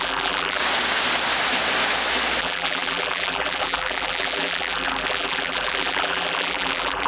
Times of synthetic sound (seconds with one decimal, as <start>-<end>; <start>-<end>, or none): 0.0-0.6; 2.4-7.1